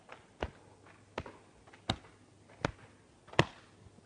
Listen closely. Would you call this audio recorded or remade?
recorded